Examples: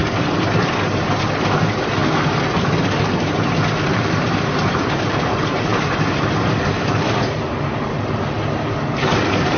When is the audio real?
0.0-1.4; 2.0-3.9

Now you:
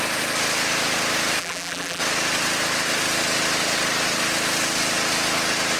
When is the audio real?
0.0-1.4; 2.0-5.8

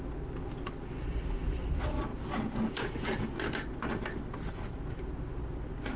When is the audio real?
0.0-6.0

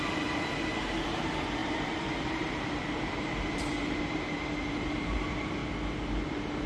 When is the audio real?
5.6-6.3

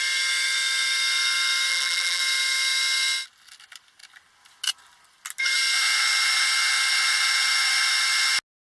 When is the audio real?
0.0-1.7; 2.2-8.6

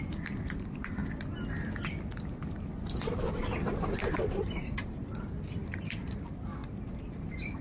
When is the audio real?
1.0-4.0; 6.6-7.1

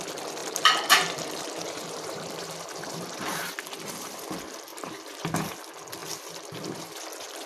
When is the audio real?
0.0-0.4; 3.5-4.7; 5.5-7.5